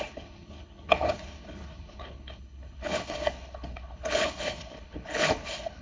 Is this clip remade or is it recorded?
remade